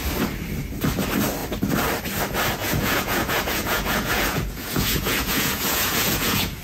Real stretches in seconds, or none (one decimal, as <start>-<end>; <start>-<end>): 0.0-2.6

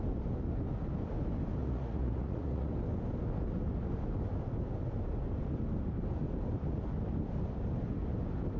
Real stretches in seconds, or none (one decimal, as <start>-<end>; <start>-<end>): 0.0-1.6; 2.7-8.6

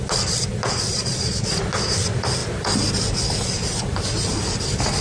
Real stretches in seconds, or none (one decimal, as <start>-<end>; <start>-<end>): 0.0-0.9; 1.6-5.0